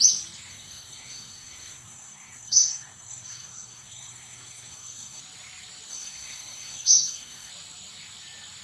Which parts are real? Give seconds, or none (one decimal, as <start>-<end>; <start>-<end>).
0.0-0.5; 5.2-5.9; 7.5-8.6